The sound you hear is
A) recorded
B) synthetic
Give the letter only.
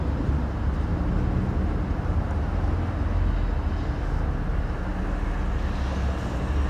A